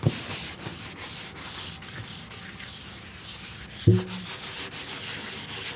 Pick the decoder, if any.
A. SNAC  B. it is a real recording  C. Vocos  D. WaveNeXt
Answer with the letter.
B